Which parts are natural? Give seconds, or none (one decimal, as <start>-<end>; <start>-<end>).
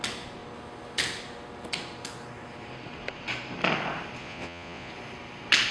0.0-4.2; 4.9-5.7